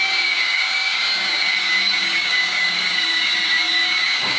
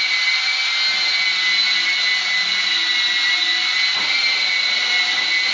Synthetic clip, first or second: first